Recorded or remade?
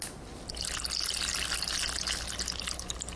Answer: recorded